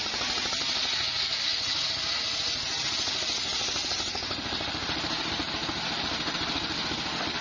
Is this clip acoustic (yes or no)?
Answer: yes